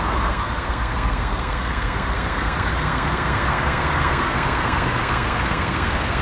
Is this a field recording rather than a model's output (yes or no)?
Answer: no